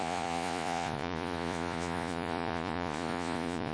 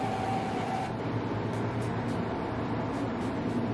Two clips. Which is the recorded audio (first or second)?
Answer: second